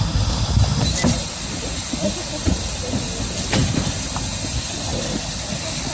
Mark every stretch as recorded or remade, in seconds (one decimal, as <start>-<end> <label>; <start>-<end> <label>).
0.0-5.9 recorded